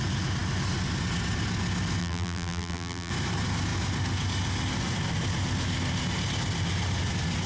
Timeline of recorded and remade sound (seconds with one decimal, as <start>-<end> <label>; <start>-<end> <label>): 0.0-2.0 recorded; 2.0-3.1 remade; 3.1-7.5 recorded